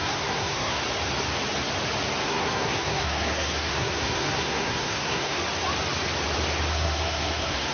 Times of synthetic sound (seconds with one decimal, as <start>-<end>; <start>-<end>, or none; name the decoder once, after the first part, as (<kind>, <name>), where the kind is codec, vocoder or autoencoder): 0.0-0.8 (codec, SNAC); 2.2-5.4; 6.7-7.7